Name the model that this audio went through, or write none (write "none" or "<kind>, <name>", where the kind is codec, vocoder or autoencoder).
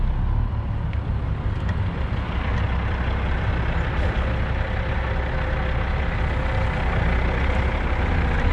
none